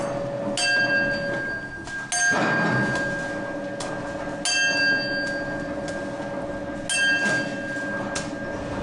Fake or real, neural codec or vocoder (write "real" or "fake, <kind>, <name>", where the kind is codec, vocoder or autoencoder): real